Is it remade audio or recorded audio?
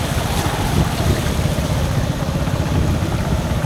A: recorded